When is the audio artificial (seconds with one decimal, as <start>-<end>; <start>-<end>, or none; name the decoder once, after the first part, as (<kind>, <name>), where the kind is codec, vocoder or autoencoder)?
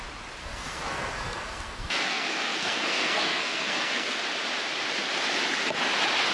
0.4-4.2 (codec, SNAC)